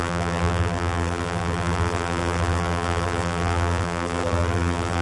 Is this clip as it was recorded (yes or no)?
no